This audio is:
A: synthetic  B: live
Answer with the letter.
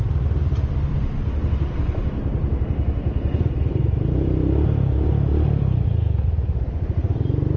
A